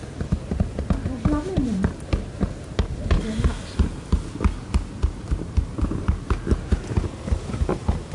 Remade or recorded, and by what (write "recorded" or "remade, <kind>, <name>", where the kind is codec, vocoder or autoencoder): recorded